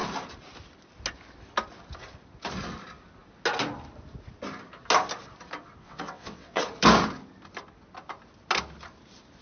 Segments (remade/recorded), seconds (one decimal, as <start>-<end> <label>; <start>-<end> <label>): 0.0-5.8 recorded; 5.8-6.6 remade; 6.6-9.4 recorded